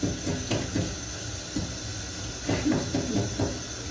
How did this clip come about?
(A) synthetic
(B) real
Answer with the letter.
B